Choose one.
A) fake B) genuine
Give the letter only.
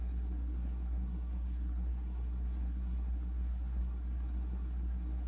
A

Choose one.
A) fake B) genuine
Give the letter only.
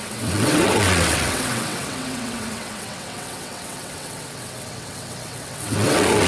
A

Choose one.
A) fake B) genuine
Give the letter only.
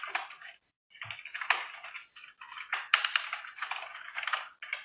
B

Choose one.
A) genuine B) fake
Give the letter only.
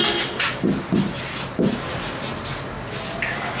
A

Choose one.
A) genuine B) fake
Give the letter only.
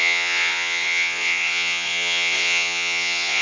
B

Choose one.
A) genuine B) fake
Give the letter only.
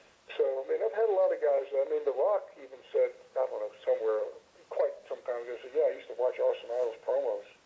A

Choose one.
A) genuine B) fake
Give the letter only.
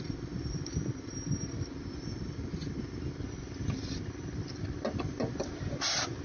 A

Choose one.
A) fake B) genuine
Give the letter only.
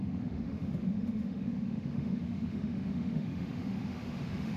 A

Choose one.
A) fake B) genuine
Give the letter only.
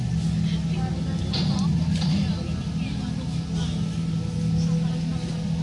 B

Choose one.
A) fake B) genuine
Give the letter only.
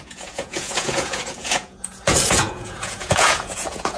A